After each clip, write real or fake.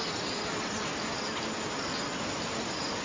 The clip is real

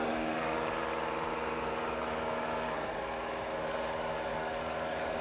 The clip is fake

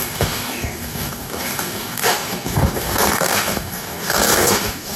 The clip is fake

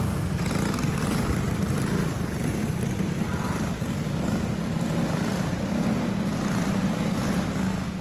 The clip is real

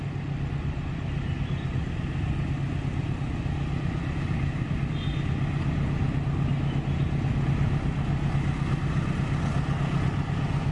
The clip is real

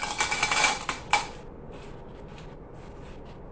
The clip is real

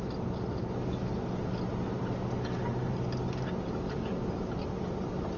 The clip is real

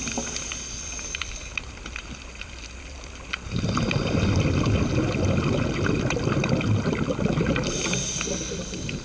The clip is real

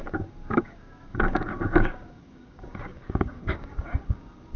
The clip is fake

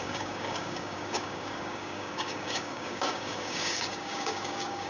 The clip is fake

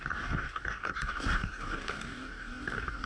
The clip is fake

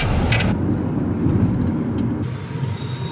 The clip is real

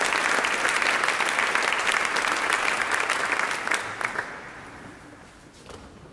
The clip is real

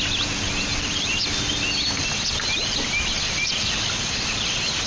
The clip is real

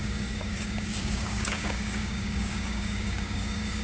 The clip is fake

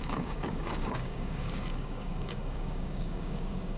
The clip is fake